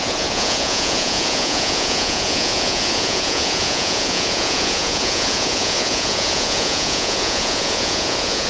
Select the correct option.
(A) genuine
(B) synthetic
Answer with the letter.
B